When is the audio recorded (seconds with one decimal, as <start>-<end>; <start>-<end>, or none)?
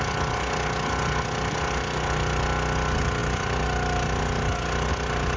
0.0-5.4